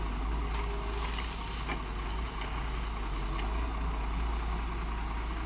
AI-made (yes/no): no